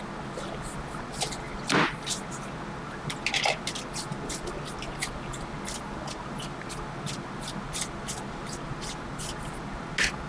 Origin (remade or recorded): recorded